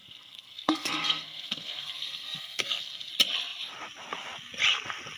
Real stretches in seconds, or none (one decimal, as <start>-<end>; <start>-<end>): 3.1-5.2